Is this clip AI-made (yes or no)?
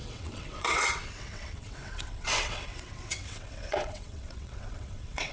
yes